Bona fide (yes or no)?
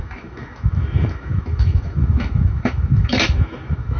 no